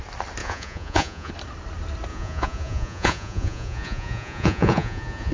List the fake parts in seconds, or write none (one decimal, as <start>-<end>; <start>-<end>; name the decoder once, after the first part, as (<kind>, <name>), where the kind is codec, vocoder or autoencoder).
0.4-1.3 (vocoder, Vocos); 2.1-5.3